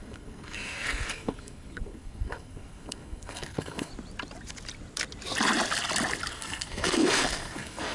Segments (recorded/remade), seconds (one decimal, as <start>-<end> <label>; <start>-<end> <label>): 0.0-3.9 remade; 3.9-6.3 recorded; 6.3-7.9 remade